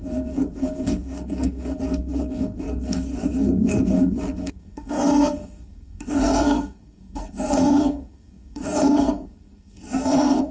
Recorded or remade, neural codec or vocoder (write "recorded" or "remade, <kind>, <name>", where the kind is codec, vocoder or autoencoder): remade, codec, SNAC